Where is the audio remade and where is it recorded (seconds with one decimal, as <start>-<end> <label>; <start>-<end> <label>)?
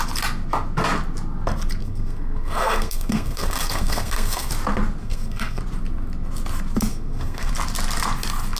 0.0-1.8 recorded; 1.8-4.5 remade; 4.5-5.0 recorded; 5.0-5.6 remade; 5.6-6.9 recorded; 6.9-7.5 remade; 7.5-8.6 recorded